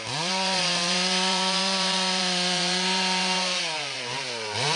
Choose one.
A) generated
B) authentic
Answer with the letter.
A